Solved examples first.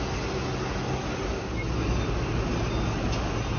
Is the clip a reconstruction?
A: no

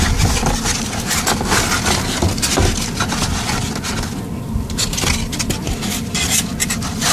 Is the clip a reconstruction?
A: no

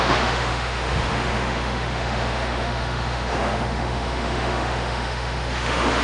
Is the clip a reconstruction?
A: yes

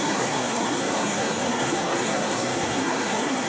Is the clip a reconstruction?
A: yes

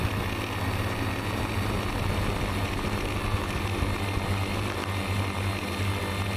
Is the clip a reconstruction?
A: no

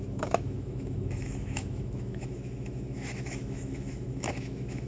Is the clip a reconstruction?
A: yes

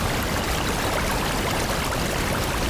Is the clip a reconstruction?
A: no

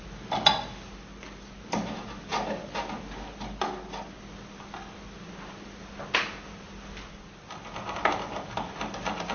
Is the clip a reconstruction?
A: no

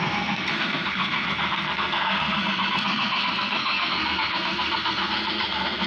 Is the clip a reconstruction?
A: yes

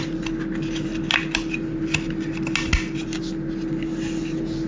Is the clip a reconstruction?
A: no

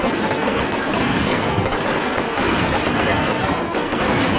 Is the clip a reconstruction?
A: yes